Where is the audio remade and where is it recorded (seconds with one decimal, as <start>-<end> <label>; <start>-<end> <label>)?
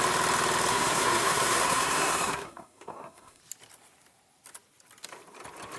0.0-0.7 recorded; 0.7-3.4 remade; 3.4-5.8 recorded